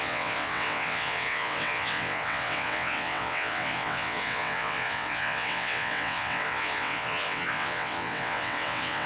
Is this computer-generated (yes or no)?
yes